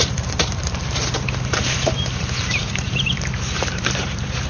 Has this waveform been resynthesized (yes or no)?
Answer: yes